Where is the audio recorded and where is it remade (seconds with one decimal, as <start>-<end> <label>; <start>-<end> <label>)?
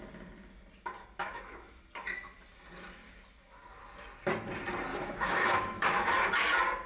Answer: 0.0-1.2 recorded; 1.2-1.8 remade; 1.8-4.9 recorded; 4.9-6.1 remade; 6.1-6.9 recorded